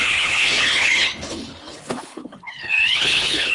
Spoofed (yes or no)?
yes